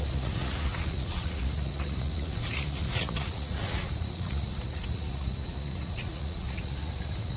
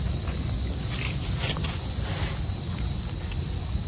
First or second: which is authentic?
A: second